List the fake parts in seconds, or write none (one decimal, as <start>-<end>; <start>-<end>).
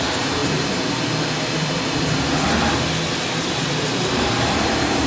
0.0-0.4; 3.3-5.1